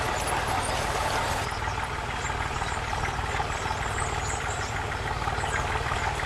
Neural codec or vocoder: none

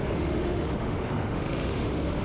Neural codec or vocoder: autoencoder, DAC-VAE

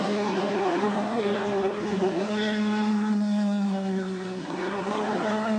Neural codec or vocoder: codec, SNAC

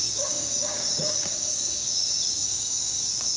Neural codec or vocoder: codec, DAC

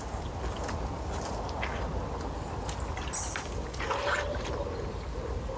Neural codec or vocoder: none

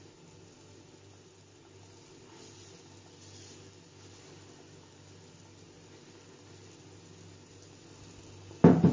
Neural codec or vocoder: none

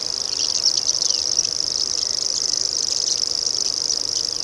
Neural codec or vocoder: none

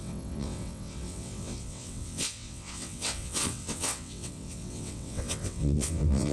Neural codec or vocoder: vocoder, WaveNeXt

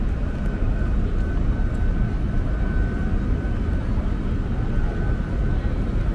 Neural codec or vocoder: none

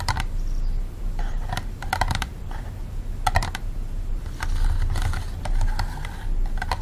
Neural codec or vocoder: none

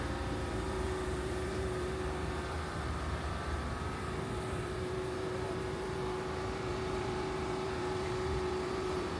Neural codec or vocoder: vocoder, BigVGAN v2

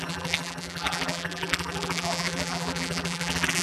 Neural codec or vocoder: vocoder, BigVGAN v2